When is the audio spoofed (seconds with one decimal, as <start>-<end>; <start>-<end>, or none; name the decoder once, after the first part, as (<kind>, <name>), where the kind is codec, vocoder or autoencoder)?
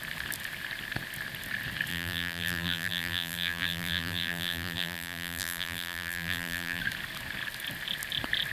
1.9-6.8 (vocoder, BigVGAN v2)